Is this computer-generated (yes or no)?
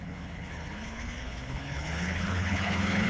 yes